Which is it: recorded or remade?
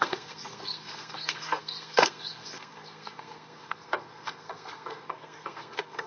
remade